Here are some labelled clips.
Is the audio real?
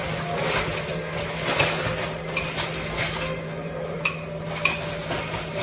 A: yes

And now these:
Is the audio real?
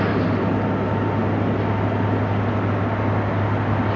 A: yes